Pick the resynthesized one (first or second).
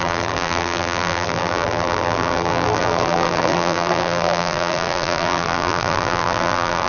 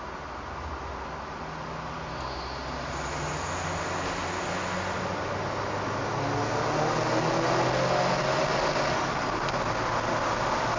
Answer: first